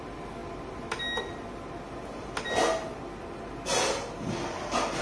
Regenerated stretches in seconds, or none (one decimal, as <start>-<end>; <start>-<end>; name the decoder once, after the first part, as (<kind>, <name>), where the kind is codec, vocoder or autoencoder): none